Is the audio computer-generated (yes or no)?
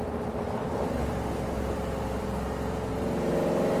no